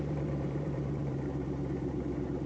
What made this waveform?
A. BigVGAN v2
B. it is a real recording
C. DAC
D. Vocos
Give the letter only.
A